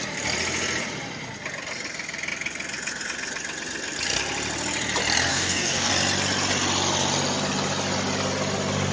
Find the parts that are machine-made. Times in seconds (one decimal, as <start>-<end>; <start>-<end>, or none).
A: 5.3-5.9